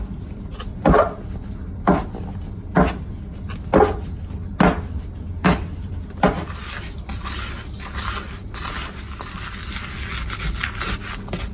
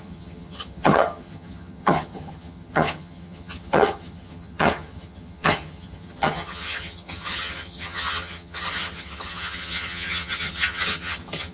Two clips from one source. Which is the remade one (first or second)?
second